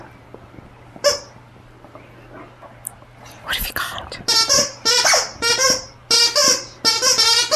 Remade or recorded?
recorded